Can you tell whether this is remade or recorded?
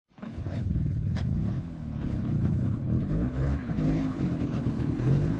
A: remade